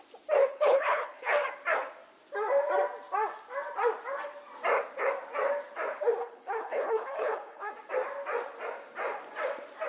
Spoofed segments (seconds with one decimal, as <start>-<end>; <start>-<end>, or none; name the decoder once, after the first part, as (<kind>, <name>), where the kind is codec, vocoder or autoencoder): 0.5-1.3 (codec, HILCodec); 6.2-7.7

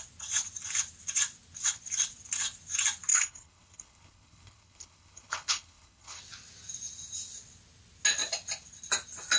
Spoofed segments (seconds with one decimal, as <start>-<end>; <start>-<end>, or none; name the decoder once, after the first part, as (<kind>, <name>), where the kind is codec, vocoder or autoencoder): 3.1-6.2 (codec, HILCodec)

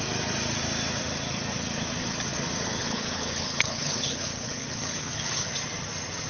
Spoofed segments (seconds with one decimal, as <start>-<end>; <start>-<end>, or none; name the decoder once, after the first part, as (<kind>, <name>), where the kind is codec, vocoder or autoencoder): 2.8-5.5 (codec, HILCodec)

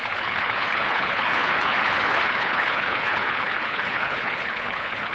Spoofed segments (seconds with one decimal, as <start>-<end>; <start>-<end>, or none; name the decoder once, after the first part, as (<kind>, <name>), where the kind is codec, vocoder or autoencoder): 0.0-5.1 (codec, HILCodec)